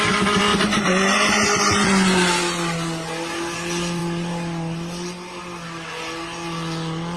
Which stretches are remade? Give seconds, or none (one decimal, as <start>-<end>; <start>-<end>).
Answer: 0.5-1.6